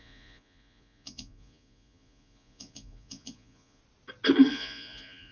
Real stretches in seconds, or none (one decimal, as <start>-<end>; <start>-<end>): 3.8-4.5